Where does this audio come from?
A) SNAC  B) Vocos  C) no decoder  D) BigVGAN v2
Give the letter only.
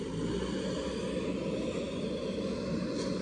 C